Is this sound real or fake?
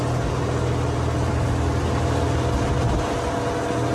real